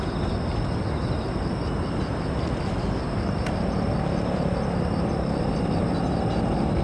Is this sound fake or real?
real